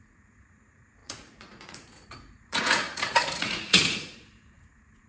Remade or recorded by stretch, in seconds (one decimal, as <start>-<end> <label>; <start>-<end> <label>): 0.0-5.1 remade